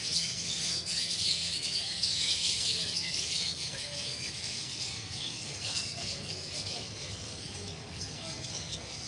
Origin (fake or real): fake